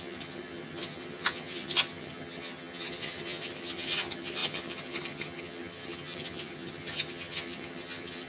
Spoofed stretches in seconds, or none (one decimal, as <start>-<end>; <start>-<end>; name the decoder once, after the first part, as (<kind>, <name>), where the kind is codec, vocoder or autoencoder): 0.0-8.3 (vocoder, HiFi-GAN)